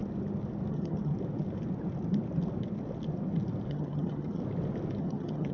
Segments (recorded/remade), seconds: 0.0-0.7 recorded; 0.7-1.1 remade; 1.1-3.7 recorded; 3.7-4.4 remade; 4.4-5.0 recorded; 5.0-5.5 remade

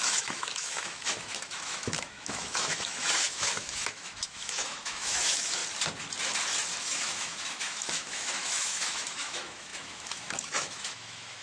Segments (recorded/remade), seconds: 0.0-5.6 remade; 5.6-6.8 recorded; 6.8-11.4 remade

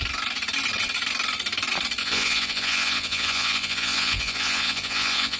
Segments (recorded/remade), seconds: 0.0-2.0 recorded; 2.0-5.4 remade

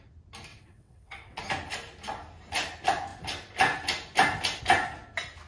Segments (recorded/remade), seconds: 0.0-0.5 recorded; 0.5-1.4 remade; 1.4-5.5 recorded

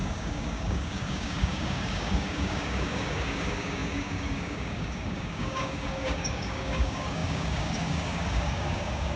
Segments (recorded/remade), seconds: 0.0-9.2 remade

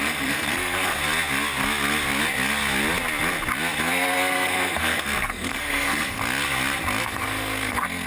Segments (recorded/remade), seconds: 0.0-1.0 remade; 1.0-3.8 recorded; 3.8-6.2 remade; 6.2-7.0 recorded; 7.0-8.1 remade

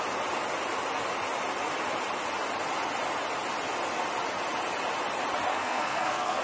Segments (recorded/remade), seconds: 0.0-5.5 recorded; 5.5-6.4 remade

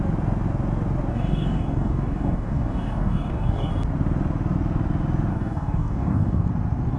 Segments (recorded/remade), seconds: 0.0-1.1 recorded; 1.1-3.7 remade; 3.7-5.3 recorded; 5.3-6.5 remade; 6.5-7.0 recorded